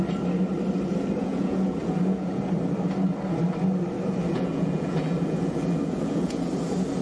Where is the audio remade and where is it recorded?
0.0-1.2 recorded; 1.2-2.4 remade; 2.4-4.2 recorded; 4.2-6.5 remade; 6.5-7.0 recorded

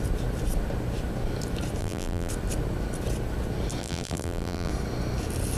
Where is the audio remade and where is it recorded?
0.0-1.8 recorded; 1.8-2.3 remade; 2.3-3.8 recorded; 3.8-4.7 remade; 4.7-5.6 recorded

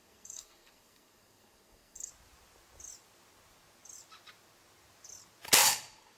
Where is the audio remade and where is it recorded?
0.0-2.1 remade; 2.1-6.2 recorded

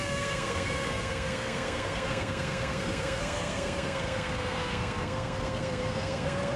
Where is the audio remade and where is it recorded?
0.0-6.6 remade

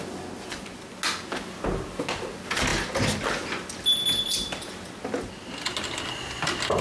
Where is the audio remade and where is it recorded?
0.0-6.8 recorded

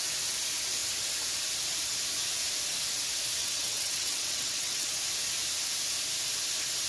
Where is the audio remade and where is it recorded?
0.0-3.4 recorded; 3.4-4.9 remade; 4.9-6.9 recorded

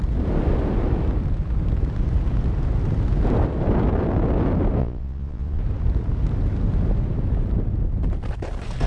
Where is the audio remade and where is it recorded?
0.0-4.8 recorded; 4.8-5.6 remade; 5.6-8.9 recorded

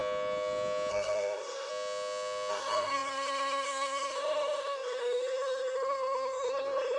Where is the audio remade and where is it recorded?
0.0-0.9 recorded; 0.9-1.7 remade; 1.7-2.5 recorded; 2.5-7.0 remade